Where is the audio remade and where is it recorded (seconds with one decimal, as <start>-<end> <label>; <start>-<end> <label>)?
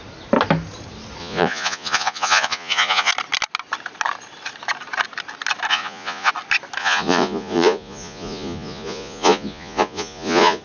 0.0-1.2 recorded; 1.2-3.1 remade; 3.1-5.7 recorded; 5.7-6.3 remade; 6.3-6.8 recorded; 6.8-10.6 remade